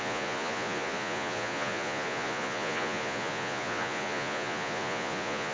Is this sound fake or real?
fake